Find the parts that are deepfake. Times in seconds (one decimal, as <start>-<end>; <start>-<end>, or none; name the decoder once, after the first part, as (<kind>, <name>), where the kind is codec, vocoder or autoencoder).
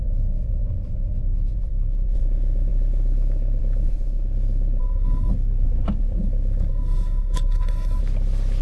4.8-5.3 (codec, SNAC); 6.7-8.0